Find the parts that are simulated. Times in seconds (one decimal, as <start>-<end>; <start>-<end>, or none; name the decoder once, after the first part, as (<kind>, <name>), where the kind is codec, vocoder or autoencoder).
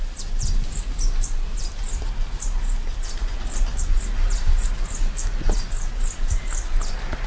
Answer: 0.0-3.3 (vocoder, BigVGAN v2)